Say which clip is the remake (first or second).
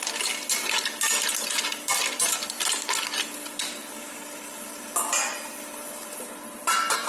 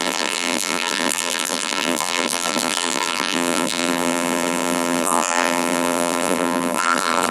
second